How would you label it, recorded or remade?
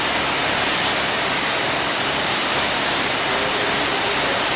remade